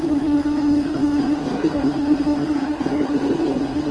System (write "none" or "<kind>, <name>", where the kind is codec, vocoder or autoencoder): codec, SNAC